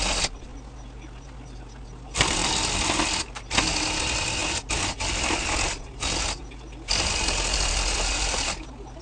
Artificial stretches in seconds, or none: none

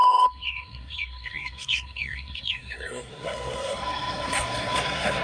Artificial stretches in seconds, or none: 0.0-5.2 (codec, SNAC)

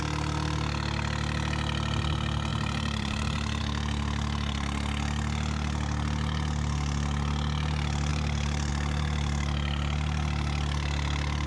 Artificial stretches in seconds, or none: 2.5-3.6 (vocoder, BigVGAN v2); 8.1-8.7

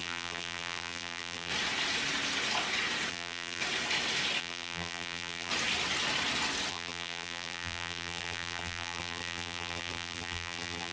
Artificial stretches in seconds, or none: 0.0-1.5 (vocoder, BigVGAN v2); 3.1-3.6; 4.4-5.5; 6.7-10.9

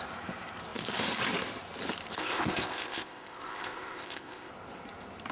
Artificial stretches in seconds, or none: 2.2-4.5 (codec, ZipCodec)

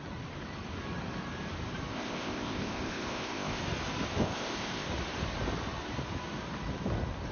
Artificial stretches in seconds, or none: 1.9-3.6 (codec, ZipCodec); 4.2-4.9

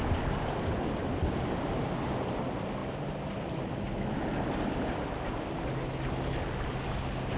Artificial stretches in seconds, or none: none